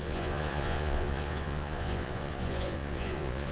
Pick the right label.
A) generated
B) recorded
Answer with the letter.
A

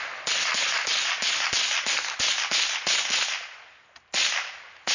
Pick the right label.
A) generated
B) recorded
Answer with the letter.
B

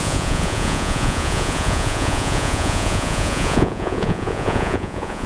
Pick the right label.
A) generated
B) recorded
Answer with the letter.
A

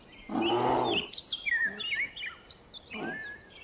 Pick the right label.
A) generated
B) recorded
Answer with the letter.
B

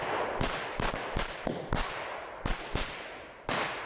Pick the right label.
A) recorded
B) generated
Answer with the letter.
A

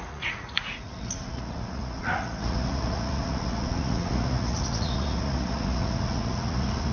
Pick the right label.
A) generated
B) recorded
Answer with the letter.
A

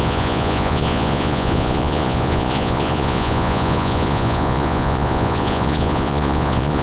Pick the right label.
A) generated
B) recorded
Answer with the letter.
A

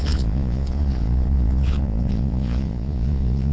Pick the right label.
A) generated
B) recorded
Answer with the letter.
A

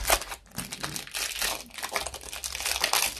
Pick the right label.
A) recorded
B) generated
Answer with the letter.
A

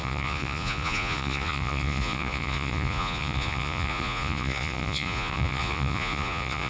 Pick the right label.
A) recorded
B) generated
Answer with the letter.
B